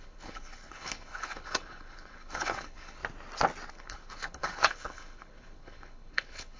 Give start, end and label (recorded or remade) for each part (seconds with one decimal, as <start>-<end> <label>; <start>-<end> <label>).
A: 0.0-3.0 remade; 3.0-3.7 recorded; 3.7-6.6 remade